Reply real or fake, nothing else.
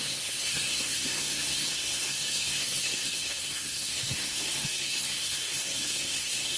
fake